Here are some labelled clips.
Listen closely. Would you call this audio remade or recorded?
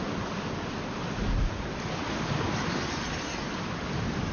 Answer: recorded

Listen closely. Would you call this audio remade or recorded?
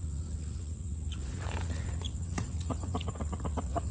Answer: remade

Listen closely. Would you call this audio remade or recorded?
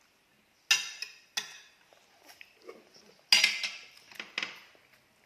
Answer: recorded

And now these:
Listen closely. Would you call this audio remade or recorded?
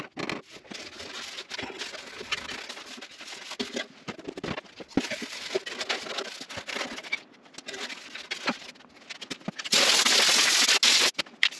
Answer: recorded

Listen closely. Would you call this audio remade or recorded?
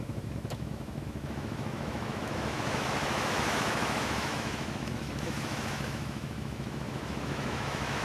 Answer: remade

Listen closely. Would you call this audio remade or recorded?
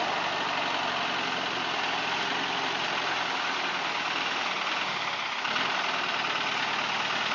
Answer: recorded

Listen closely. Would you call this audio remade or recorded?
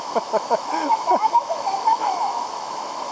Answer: remade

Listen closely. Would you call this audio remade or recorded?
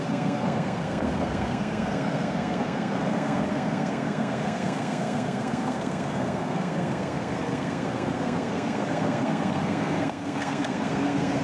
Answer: remade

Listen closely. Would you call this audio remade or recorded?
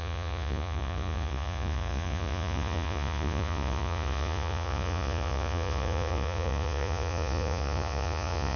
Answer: remade